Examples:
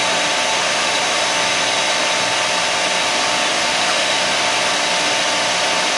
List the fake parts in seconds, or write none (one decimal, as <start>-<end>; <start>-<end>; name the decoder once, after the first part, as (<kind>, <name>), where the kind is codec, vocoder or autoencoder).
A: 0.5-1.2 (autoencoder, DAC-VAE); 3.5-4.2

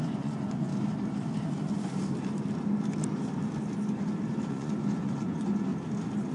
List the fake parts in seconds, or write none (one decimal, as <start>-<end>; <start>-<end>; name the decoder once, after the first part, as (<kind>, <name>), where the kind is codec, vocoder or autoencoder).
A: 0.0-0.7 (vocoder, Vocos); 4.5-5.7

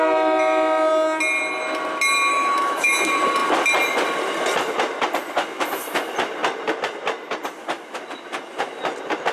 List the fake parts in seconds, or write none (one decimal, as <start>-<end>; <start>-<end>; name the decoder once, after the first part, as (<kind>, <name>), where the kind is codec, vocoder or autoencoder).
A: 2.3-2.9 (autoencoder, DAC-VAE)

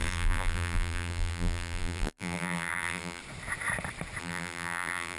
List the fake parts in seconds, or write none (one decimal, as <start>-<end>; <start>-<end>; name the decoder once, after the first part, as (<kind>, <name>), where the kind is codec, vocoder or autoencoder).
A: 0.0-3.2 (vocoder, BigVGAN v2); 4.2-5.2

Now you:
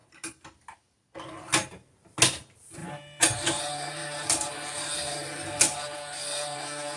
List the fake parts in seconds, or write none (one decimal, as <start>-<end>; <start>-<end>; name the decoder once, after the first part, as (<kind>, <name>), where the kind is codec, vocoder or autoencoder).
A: 2.8-7.0 (vocoder, BigVGAN v2)